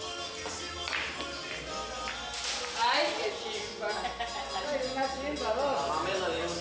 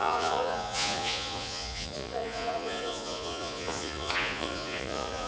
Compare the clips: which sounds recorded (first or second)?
first